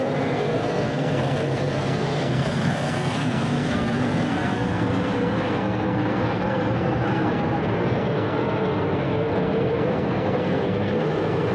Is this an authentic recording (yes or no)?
no